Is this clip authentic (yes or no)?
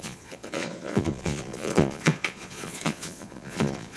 no